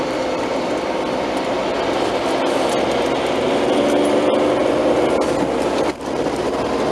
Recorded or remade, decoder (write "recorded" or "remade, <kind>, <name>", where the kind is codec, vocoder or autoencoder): recorded